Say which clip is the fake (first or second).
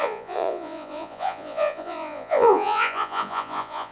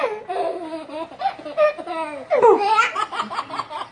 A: first